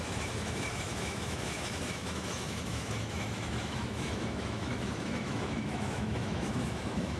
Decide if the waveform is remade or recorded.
remade